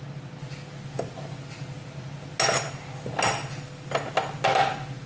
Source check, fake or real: real